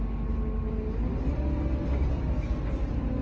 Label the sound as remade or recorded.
recorded